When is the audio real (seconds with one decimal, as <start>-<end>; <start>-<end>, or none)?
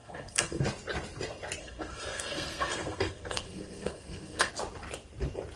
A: 0.6-1.6; 4.5-5.6